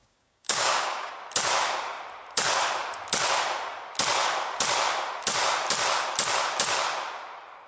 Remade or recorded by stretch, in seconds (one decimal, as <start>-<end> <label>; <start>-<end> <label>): 0.0-1.1 remade; 1.1-7.7 recorded